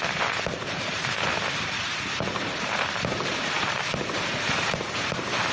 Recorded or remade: remade